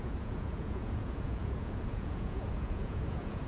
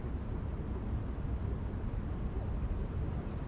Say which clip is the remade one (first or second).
first